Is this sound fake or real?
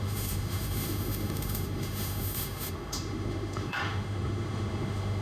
fake